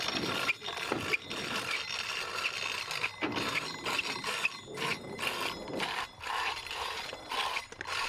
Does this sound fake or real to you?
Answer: real